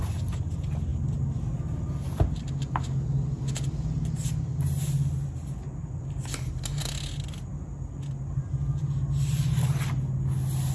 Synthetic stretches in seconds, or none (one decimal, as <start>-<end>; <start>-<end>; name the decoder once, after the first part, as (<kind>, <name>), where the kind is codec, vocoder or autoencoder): none